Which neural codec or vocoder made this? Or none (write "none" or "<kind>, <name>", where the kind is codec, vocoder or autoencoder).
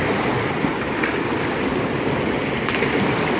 none